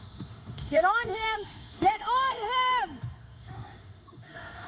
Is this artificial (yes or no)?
yes